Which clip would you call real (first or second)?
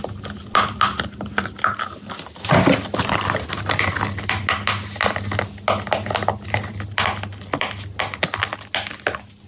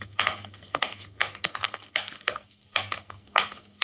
first